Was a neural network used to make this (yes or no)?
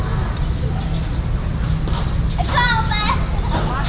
no